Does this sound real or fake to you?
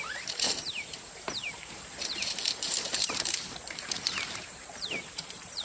fake